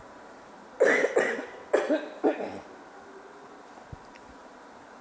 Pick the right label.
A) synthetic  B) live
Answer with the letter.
B